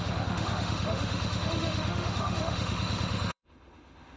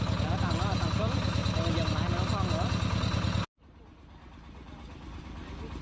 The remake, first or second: first